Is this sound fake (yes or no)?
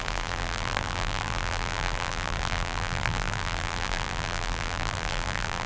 yes